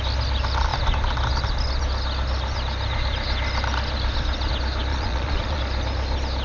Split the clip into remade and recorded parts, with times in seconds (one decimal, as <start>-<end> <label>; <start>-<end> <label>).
0.0-4.9 recorded; 4.9-5.6 remade; 5.6-6.4 recorded